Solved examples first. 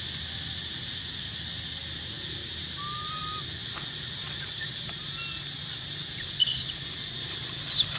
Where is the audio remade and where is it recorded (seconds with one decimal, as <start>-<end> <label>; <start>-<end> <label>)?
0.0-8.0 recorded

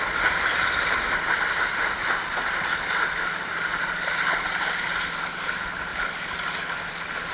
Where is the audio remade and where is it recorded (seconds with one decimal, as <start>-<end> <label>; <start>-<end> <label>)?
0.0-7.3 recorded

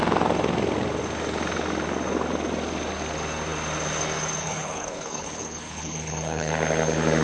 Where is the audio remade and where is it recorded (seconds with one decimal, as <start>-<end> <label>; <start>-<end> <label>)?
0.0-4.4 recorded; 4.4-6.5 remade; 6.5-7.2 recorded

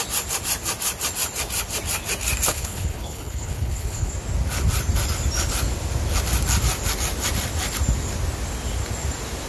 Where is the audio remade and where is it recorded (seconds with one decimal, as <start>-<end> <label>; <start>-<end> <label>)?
0.0-2.5 recorded; 2.5-4.1 remade; 4.1-9.5 recorded

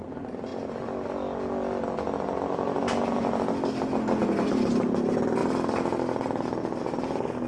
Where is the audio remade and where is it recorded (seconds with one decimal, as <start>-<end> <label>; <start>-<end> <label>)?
0.0-7.5 recorded